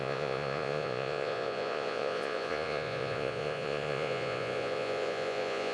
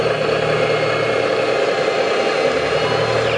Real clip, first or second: second